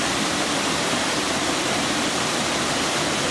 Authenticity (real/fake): real